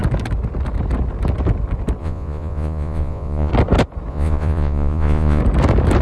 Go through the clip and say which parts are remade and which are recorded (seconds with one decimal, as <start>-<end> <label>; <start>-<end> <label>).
0.0-2.0 recorded; 2.0-3.5 remade; 3.5-4.1 recorded; 4.1-5.4 remade; 5.4-6.0 recorded